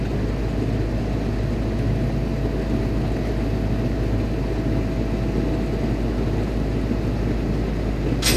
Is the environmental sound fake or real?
real